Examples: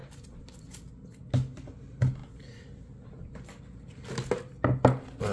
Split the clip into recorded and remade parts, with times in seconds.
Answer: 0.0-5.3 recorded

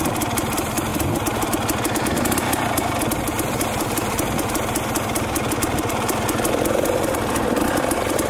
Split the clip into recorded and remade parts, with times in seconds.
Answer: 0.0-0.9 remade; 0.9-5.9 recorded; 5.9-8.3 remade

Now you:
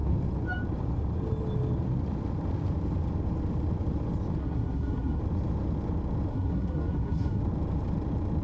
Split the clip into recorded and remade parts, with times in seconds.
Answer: 0.0-4.4 recorded; 4.4-5.2 remade; 5.2-6.3 recorded; 6.3-7.4 remade; 7.4-8.4 recorded

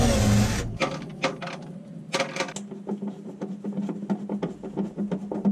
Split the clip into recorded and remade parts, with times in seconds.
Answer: 0.0-5.5 recorded

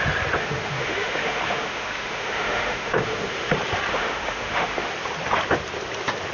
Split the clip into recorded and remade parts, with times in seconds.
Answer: 0.0-0.4 recorded; 0.4-3.5 remade; 3.5-3.9 recorded; 3.9-4.9 remade; 4.9-6.3 recorded